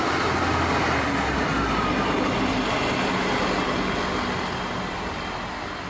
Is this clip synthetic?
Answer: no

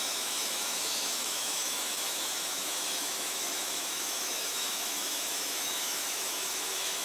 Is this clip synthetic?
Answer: yes